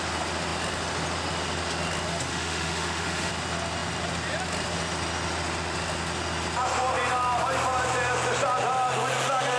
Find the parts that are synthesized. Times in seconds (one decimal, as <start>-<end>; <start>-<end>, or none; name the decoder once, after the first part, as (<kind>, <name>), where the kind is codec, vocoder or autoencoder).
2.3-3.3 (autoencoder, DAC-VAE)